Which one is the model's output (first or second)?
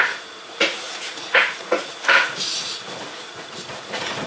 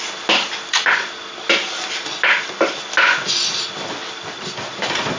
first